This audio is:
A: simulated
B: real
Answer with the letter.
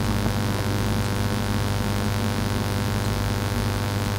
B